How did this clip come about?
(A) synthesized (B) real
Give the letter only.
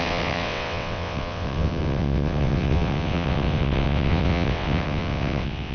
A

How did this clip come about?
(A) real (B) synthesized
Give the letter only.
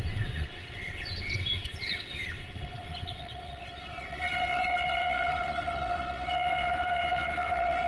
B